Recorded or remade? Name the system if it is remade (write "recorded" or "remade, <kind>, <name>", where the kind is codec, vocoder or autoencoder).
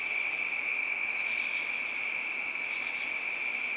recorded